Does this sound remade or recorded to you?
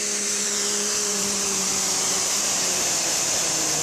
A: remade